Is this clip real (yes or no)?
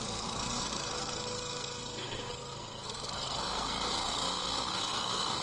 no